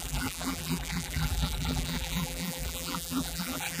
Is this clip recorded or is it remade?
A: remade